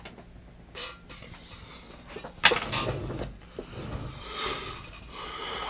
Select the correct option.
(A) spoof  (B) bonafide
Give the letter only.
B